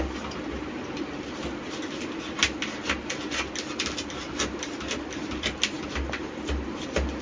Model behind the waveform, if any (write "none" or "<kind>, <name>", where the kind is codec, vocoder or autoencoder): none